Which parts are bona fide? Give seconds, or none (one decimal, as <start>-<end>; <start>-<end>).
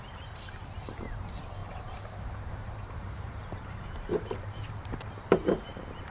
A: 0.0-1.6; 5.3-6.1